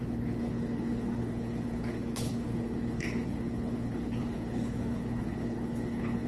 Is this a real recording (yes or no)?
no